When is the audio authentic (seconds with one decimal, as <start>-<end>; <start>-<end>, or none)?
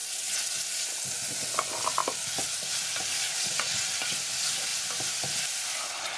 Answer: 0.6-3.3; 4.0-6.2